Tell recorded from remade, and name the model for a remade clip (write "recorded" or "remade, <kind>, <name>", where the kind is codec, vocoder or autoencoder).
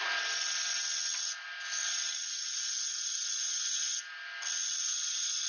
recorded